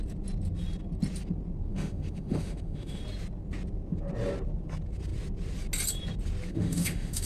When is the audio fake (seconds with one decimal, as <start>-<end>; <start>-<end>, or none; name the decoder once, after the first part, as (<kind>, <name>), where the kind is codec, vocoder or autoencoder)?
1.7-3.0 (autoencoder, DAC-VAE); 6.5-7.3